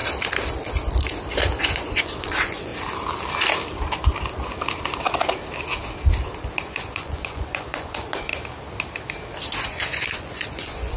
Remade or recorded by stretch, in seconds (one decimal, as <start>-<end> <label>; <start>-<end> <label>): 0.0-1.6 recorded; 1.6-2.7 remade; 2.7-6.6 recorded; 6.6-8.3 remade; 8.3-9.6 recorded; 9.6-11.0 remade